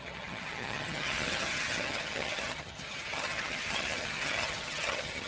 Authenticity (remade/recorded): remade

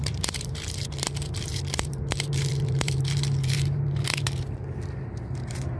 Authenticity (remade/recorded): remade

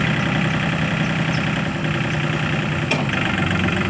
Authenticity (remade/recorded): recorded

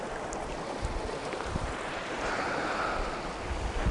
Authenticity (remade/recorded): recorded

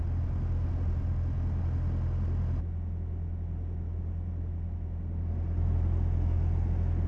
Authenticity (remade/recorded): recorded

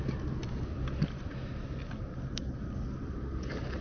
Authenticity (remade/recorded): recorded